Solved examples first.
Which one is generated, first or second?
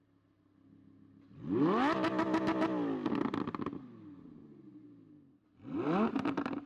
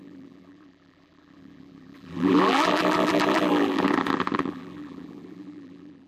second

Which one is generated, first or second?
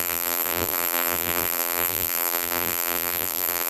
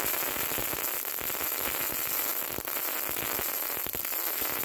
first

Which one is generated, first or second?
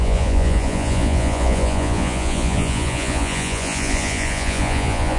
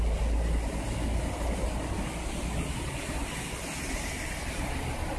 first